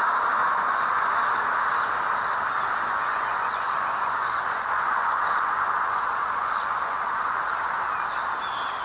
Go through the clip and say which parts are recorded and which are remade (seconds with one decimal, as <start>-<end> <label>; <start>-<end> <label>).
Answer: 0.0-0.4 recorded; 0.4-1.2 remade; 1.2-2.9 recorded; 2.9-7.5 remade; 7.5-8.8 recorded